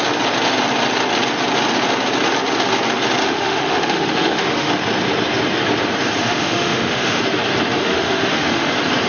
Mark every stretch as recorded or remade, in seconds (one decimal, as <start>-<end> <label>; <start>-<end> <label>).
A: 0.0-3.2 recorded; 3.2-4.7 remade; 4.7-6.2 recorded; 6.2-7.2 remade; 7.2-7.8 recorded; 7.8-8.7 remade; 8.7-9.1 recorded